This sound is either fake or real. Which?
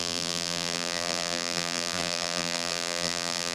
fake